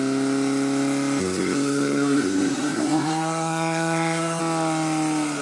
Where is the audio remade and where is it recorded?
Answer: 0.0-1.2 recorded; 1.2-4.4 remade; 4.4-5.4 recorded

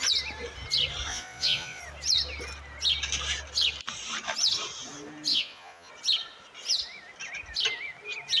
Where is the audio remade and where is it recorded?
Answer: 0.0-1.1 recorded; 1.1-1.8 remade; 1.8-5.3 recorded; 5.3-5.9 remade; 5.9-8.4 recorded